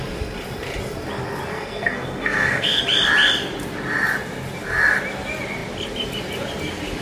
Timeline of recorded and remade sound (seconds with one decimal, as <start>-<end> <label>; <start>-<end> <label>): 0.0-1.5 recorded; 1.5-2.8 remade; 2.8-7.0 recorded